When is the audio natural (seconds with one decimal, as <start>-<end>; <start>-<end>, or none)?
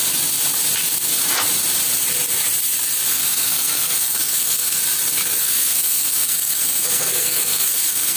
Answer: 0.0-3.1; 4.8-5.4